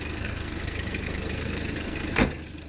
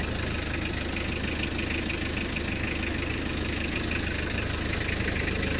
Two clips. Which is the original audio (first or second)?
second